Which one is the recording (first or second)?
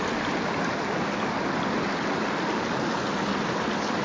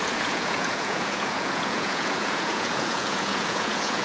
first